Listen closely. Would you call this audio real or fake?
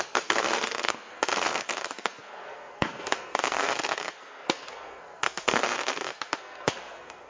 fake